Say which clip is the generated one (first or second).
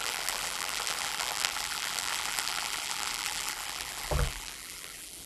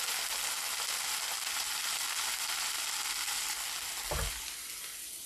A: first